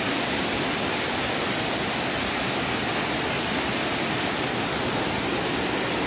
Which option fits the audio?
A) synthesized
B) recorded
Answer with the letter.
B